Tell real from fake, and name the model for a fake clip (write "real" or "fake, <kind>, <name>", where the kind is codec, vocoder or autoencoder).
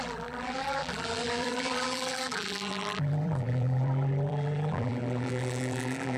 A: fake, vocoder, BigVGAN v2